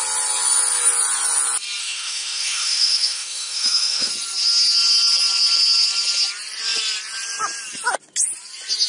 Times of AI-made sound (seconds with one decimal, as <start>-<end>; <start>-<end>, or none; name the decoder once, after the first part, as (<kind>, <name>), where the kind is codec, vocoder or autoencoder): 1.8-4.1 (autoencoder, DAC-VAE)